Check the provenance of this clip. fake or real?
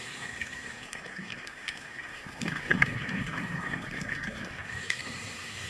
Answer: fake